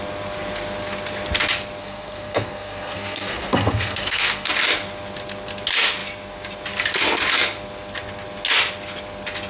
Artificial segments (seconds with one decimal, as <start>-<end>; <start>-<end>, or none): 1.8-4.5